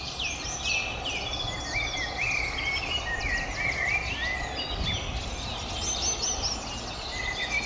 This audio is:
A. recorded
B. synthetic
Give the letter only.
A